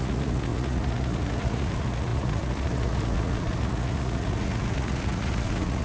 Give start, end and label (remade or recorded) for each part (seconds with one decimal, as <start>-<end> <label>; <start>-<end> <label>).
0.0-5.8 remade